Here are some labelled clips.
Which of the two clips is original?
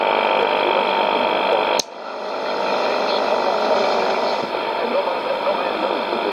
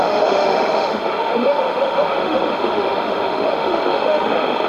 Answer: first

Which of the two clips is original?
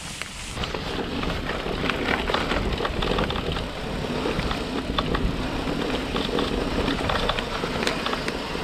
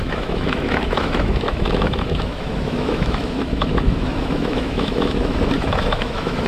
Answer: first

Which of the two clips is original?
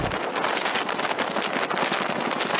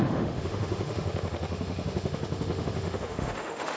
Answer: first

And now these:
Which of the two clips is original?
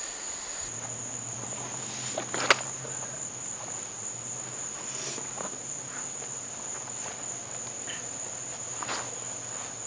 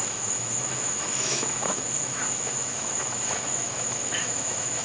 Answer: first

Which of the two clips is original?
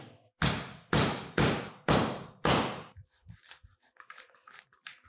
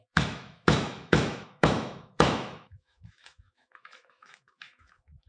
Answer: first